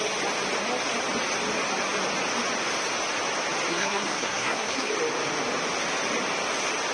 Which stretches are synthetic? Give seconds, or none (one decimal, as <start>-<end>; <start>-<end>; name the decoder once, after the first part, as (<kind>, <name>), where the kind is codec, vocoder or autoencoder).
3.7-4.9 (codec, SNAC)